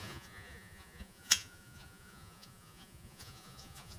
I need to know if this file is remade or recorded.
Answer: remade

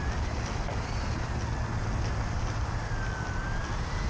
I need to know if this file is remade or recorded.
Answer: recorded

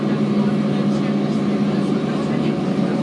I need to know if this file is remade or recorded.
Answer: recorded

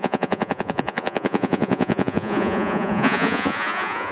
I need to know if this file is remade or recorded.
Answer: remade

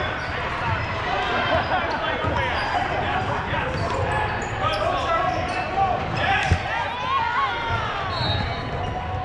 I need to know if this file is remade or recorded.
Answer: recorded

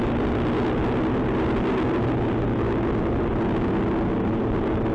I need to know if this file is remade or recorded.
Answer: recorded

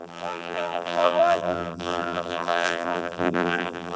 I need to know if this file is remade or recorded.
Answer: remade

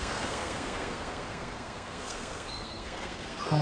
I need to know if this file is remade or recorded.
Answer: remade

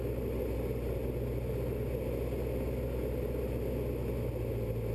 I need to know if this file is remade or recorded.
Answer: recorded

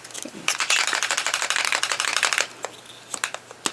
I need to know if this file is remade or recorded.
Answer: recorded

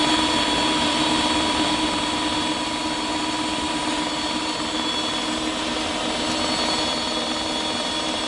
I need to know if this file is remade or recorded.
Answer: recorded